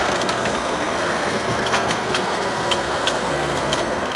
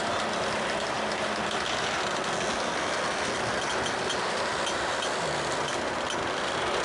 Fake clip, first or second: first